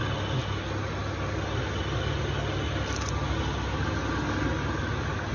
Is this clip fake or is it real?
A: real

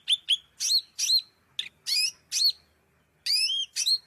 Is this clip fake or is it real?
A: real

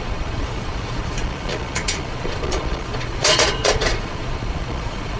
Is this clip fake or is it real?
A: fake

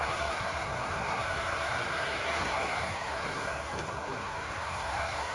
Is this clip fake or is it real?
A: fake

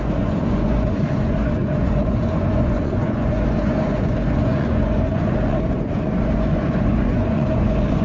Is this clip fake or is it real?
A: fake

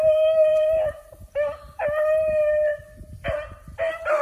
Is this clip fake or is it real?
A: real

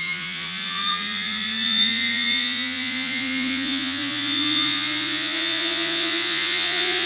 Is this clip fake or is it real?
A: fake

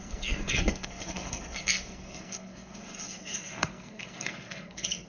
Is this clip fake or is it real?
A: fake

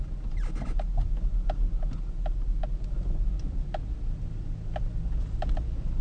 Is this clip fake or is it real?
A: real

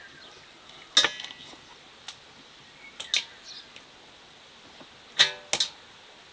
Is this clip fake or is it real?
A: real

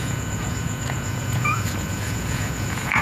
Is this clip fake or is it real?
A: fake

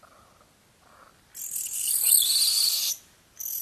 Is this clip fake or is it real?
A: real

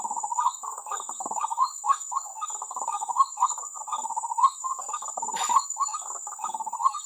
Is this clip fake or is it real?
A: fake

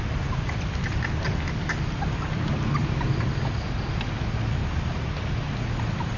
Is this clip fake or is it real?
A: real